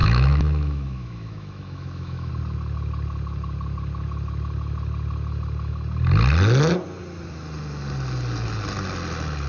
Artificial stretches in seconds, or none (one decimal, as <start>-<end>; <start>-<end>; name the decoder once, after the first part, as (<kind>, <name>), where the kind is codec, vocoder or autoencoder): 0.0-2.3 (autoencoder, DAC-VAE)